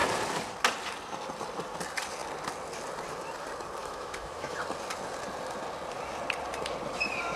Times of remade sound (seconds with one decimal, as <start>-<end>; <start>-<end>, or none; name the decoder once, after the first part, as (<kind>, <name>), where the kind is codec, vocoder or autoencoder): 3.8-4.6 (autoencoder, DAC-VAE)